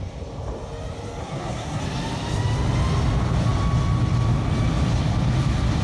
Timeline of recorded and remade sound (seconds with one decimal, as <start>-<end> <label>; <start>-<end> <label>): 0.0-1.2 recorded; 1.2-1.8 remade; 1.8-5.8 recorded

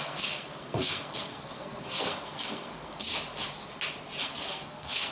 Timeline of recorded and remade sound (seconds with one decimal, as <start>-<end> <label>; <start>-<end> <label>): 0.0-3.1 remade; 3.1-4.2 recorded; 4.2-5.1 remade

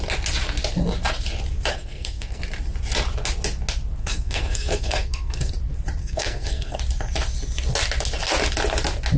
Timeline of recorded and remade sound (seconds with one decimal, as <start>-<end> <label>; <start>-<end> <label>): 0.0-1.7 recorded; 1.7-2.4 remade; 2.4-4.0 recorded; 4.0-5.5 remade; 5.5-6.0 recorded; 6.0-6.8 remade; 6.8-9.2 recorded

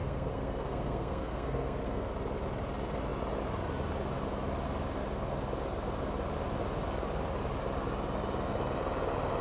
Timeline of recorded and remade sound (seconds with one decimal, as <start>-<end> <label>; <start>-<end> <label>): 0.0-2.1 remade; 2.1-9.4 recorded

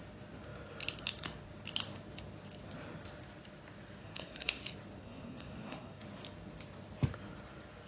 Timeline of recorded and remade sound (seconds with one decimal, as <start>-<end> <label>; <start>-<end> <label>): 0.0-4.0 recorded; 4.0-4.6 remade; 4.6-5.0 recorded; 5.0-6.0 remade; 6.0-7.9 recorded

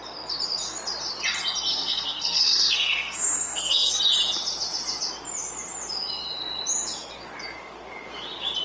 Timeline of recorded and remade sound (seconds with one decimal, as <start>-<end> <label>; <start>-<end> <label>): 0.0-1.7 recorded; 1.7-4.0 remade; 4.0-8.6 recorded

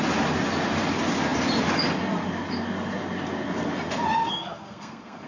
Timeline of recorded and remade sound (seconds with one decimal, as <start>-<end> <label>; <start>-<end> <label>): 0.0-4.2 recorded; 4.2-5.3 remade

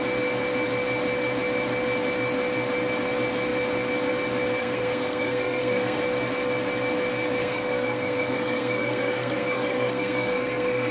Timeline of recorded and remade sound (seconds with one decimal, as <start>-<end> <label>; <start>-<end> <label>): 0.0-4.6 recorded; 4.6-6.0 remade; 6.0-7.4 recorded; 7.4-10.9 remade